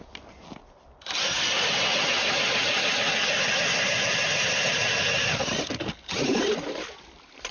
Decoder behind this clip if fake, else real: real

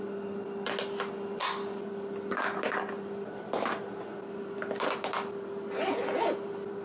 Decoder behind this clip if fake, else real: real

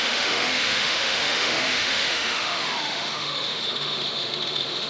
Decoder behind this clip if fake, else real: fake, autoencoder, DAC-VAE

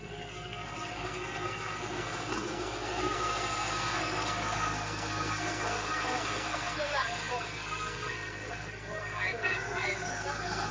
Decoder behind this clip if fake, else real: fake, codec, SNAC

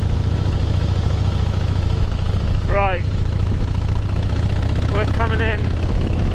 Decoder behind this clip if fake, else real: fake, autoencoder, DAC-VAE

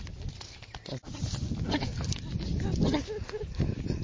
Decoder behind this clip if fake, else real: real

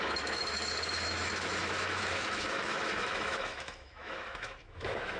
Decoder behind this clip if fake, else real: fake, autoencoder, DAC-VAE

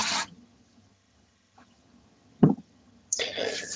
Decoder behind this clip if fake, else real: fake, vocoder, HiFi-GAN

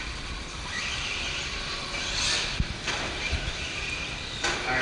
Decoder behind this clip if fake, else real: real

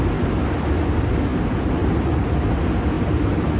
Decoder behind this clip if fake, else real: real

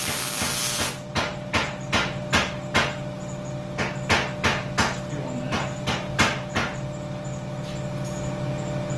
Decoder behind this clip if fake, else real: real